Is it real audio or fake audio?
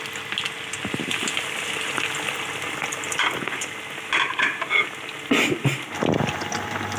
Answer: real